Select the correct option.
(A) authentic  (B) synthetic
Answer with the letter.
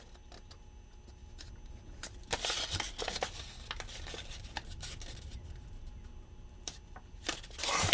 A